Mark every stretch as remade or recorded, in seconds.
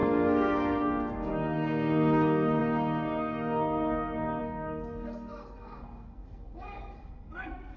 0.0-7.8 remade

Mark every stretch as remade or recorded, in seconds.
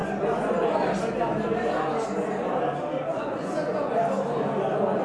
0.0-3.1 recorded; 3.1-3.9 remade; 3.9-5.0 recorded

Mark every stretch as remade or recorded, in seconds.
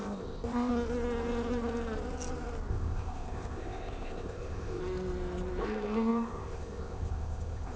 0.0-0.7 remade; 0.7-2.7 recorded; 2.7-4.8 remade; 4.8-5.6 recorded; 5.6-7.8 remade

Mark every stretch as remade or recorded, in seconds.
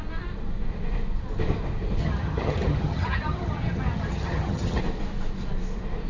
0.0-2.0 recorded; 2.0-4.8 remade; 4.8-6.1 recorded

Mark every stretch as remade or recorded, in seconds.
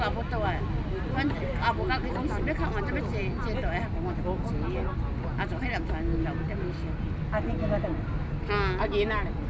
0.0-9.5 recorded